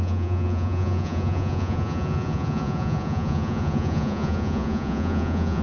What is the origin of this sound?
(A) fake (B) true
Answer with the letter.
A